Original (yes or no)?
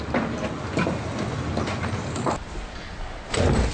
yes